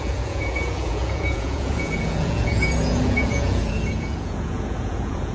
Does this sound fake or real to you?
fake